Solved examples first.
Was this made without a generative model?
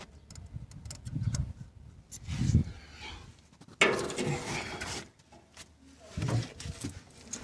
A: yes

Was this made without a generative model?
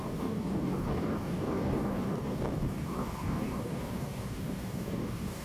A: no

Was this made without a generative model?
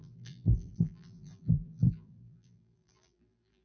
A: no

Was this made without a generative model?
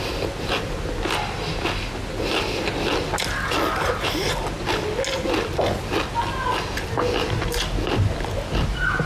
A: yes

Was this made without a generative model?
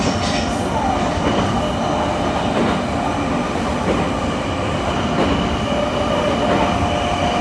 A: yes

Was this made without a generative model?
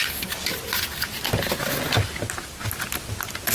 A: yes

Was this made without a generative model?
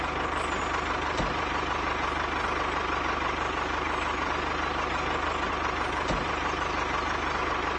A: yes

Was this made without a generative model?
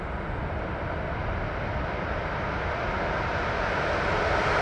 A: yes